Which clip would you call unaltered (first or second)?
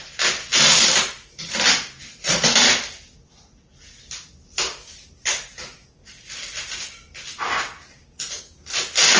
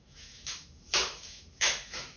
first